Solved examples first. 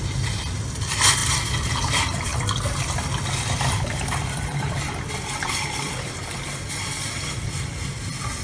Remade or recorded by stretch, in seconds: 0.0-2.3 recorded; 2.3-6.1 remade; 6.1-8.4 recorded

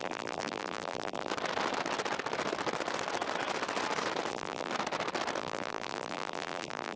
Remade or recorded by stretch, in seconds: 0.0-1.3 remade; 1.3-4.3 recorded; 4.3-4.7 remade; 4.7-5.4 recorded; 5.4-7.0 remade